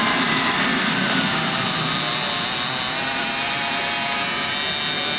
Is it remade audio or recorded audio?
recorded